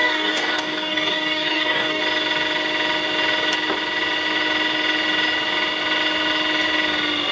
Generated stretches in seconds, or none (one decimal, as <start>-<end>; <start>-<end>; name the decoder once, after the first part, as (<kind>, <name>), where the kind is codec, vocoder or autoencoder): 0.0-2.0 (codec, DAC)